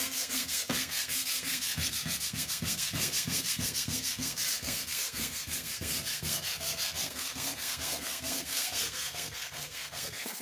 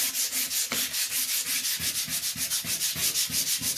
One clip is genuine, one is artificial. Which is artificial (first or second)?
first